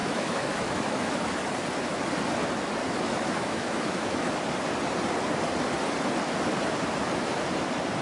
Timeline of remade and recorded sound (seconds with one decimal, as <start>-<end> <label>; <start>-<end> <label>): 0.0-1.2 remade; 1.2-2.8 recorded; 2.8-4.3 remade; 4.3-8.0 recorded